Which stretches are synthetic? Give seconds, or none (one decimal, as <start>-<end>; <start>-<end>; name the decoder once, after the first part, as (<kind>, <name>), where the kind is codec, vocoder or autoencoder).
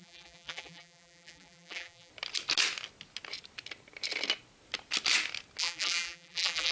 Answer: 0.0-2.1 (vocoder, BigVGAN v2); 5.6-6.7